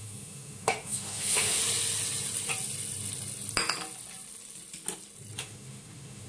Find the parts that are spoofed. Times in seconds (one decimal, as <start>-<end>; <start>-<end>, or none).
0.0-1.6; 5.4-6.3